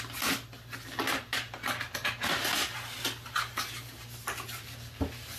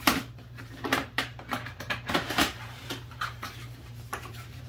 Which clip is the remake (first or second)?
second